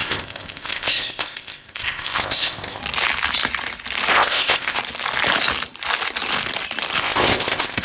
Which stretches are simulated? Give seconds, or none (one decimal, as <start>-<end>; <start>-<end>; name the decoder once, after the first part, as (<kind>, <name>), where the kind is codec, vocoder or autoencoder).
0.0-2.8 (codec, ZipCodec); 4.1-4.8; 7.0-7.8